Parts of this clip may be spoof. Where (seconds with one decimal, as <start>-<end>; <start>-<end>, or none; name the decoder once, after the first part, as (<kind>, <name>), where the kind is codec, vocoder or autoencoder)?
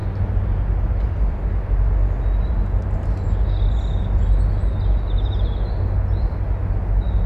none